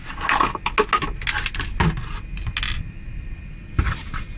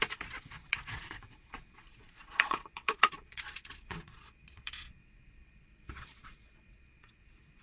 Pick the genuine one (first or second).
first